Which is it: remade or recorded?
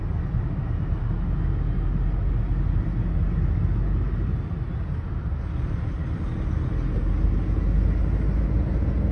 recorded